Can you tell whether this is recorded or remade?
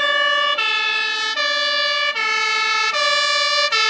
recorded